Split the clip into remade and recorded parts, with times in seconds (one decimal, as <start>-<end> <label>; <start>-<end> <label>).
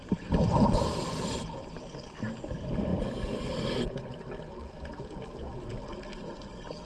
0.0-0.5 recorded; 0.5-1.4 remade; 1.4-6.9 recorded